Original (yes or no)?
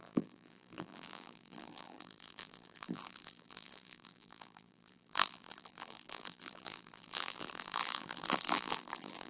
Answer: no